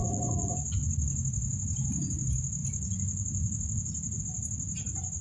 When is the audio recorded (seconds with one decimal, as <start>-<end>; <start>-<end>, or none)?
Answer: 0.9-5.2